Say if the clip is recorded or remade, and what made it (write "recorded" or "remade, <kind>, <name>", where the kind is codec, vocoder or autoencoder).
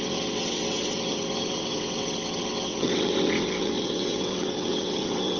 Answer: remade, vocoder, WaveNeXt